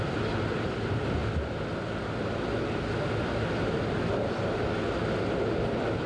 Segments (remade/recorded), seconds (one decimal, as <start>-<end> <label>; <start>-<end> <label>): 0.0-6.1 recorded